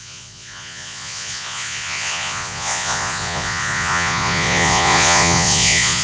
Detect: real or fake fake